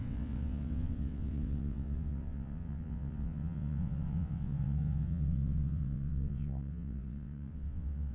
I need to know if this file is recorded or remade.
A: remade